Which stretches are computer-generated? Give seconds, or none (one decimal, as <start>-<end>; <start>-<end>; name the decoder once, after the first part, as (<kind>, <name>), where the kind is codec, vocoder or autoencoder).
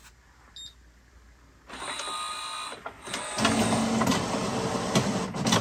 none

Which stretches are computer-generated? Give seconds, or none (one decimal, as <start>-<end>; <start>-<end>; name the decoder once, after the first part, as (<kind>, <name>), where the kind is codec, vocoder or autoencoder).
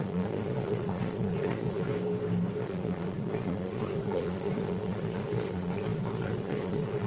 0.0-1.9 (vocoder, Vocos); 2.6-7.1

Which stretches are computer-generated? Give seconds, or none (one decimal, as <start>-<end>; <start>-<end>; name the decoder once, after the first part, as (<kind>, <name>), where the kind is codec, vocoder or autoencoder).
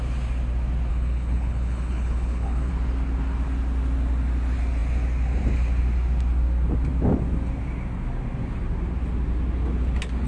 0.9-2.7 (codec, HILCodec)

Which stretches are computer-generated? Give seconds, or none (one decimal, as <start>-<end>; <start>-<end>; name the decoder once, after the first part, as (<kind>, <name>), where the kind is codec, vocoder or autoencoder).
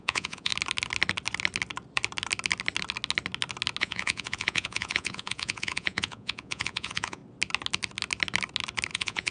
0.0-0.5 (vocoder, Vocos); 3.8-7.2; 8.9-9.3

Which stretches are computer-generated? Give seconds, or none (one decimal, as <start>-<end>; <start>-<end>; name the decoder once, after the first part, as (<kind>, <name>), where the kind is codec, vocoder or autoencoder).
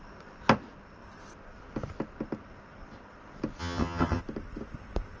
3.6-4.2 (vocoder, HiFi-GAN)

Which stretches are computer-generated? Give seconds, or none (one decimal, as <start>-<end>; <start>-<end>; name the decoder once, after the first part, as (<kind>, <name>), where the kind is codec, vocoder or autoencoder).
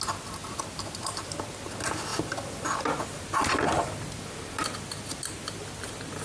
none